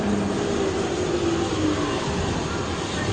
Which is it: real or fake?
real